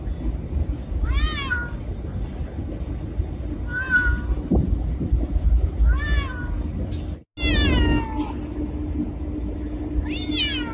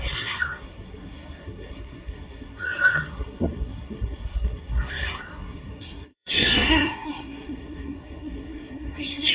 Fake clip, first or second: second